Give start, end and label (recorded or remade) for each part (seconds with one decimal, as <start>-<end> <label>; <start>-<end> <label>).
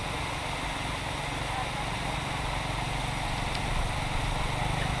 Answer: 0.0-5.0 recorded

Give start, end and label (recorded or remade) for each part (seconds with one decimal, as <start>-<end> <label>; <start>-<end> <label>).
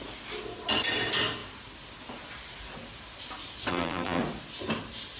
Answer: 0.0-3.7 recorded; 3.7-4.2 remade; 4.2-5.2 recorded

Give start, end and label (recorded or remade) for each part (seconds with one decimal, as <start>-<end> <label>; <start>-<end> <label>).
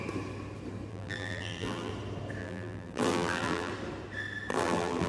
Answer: 0.0-0.9 recorded; 0.9-1.9 remade; 1.9-2.4 recorded; 2.4-3.7 remade; 3.7-4.5 recorded; 4.5-5.1 remade